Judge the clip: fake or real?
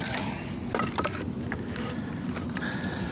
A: real